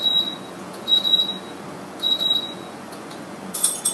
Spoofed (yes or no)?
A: yes